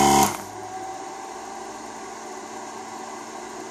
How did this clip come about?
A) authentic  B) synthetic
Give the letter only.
A